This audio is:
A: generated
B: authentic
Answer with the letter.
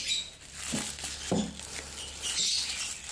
B